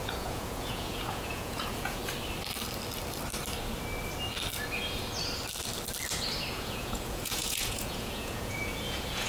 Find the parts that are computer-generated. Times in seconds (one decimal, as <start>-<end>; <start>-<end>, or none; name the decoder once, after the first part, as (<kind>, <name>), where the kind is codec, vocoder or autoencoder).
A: 0.0-2.0 (vocoder, Vocos); 6.5-9.3